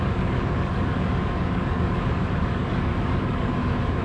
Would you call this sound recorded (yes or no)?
no